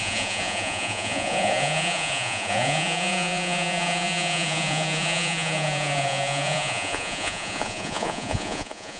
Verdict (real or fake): fake